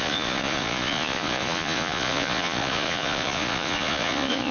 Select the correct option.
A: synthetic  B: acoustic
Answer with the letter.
A